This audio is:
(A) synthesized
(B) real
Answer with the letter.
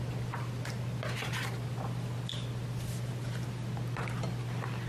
B